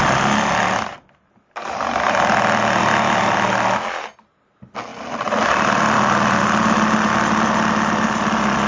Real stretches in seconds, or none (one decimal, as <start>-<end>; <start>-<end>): 0.0-8.7